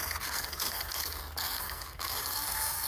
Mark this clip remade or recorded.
remade